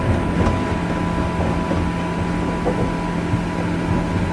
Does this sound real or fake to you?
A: real